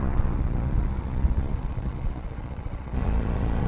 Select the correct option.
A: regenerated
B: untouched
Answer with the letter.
A